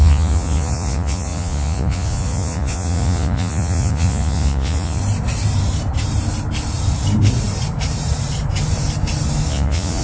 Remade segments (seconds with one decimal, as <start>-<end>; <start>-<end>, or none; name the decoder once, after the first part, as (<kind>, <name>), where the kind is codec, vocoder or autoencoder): 0.0-5.0 (vocoder, Vocos); 9.5-10.0